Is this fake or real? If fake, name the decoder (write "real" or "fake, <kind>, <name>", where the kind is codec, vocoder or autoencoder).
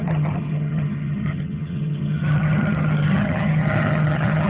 fake, vocoder, HiFi-GAN